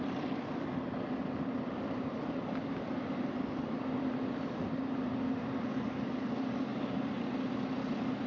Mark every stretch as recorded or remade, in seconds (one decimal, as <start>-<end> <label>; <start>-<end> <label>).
0.0-8.3 remade